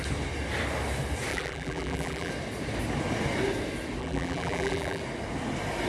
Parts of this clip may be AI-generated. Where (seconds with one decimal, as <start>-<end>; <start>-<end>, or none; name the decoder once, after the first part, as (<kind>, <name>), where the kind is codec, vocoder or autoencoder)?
1.3-2.3 (vocoder, BigVGAN v2); 4.0-5.0